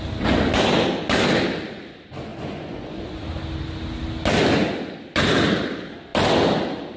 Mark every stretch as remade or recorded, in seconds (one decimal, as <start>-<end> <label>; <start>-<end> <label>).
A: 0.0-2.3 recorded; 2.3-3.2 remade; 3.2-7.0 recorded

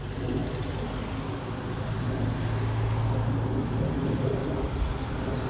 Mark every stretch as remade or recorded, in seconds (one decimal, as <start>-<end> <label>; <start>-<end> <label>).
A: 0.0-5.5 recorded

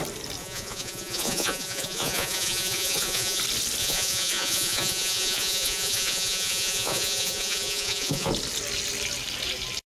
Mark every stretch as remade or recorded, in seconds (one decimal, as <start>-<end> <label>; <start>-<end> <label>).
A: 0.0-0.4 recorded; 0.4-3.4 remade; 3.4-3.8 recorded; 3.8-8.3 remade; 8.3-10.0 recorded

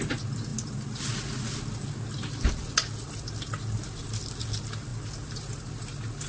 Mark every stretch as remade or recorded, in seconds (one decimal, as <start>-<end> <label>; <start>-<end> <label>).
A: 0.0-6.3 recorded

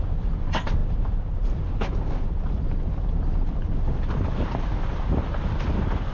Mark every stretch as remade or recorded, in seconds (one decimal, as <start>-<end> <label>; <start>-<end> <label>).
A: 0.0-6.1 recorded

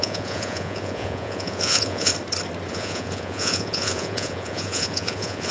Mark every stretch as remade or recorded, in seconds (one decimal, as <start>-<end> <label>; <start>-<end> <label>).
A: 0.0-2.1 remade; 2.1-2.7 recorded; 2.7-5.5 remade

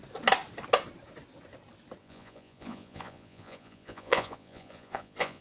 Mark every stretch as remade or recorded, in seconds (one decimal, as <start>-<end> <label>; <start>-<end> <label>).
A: 0.0-2.0 recorded; 2.0-5.4 remade